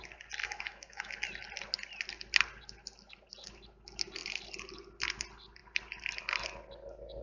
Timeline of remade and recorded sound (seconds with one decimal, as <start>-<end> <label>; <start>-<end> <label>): 0.0-0.4 recorded; 0.4-1.1 remade; 1.1-7.2 recorded